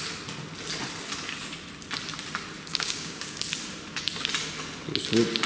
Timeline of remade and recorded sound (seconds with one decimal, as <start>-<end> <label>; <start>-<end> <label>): 0.0-2.7 recorded; 2.7-3.4 remade; 3.4-5.5 recorded